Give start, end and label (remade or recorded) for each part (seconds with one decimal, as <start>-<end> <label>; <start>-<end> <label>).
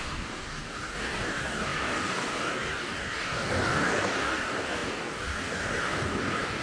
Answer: 0.0-6.6 remade